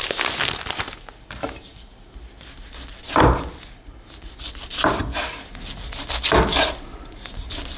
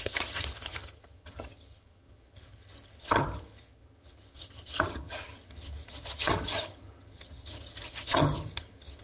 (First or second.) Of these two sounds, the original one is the first